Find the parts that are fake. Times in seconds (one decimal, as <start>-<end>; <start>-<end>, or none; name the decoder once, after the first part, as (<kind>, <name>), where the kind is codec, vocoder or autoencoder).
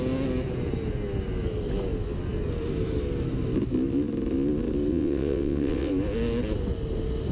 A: 4.9-5.9 (vocoder, WaveNeXt)